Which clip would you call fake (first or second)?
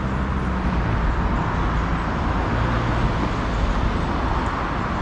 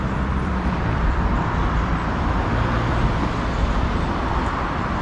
second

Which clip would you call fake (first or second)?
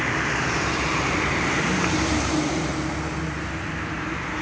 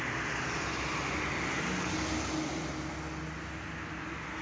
first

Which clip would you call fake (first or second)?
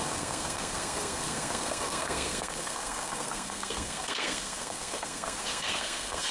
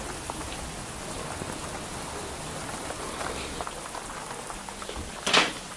first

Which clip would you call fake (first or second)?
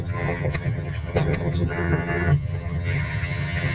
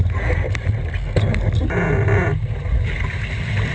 first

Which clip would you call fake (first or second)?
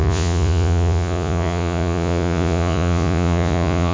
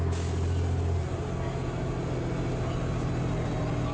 first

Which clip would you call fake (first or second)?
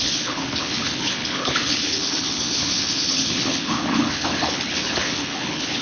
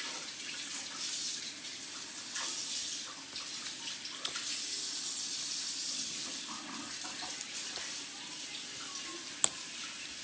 first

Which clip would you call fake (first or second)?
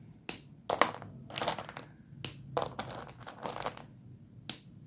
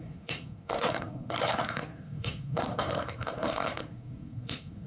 second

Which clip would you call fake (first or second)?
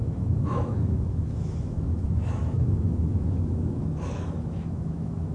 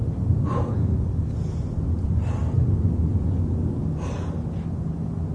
first